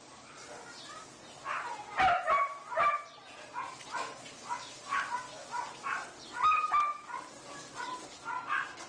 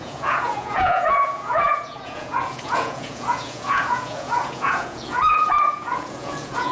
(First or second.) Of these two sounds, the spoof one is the second